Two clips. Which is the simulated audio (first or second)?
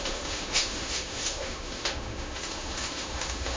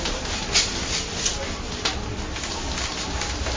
first